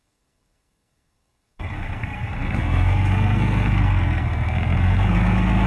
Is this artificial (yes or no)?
yes